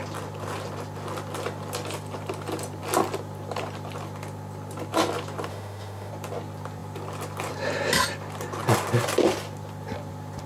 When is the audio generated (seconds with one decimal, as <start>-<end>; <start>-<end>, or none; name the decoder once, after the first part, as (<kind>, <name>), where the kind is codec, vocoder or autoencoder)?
5.5-6.1 (autoencoder, DAC-VAE)